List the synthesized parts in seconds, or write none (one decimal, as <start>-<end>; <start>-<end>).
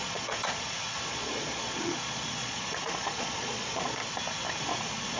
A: 0.0-4.0; 4.6-5.2